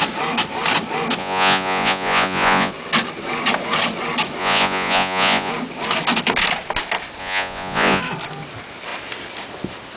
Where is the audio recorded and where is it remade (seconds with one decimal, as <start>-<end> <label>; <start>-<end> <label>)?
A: 0.0-1.2 recorded; 1.2-2.7 remade; 2.7-4.4 recorded; 4.4-5.5 remade; 5.5-7.2 recorded; 7.2-8.0 remade; 8.0-10.0 recorded